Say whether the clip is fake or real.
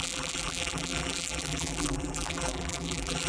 fake